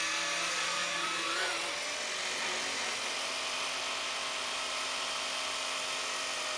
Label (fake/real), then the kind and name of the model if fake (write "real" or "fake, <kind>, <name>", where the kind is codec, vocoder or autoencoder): real